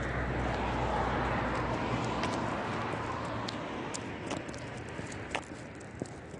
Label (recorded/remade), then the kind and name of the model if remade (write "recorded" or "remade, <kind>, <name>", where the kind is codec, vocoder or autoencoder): recorded